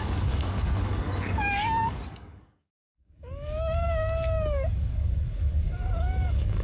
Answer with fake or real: fake